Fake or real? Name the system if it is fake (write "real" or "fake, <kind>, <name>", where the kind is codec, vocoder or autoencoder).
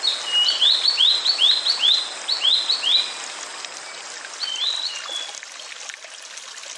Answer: real